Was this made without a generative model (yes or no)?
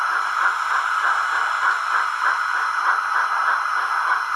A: yes